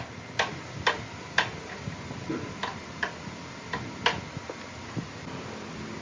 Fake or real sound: fake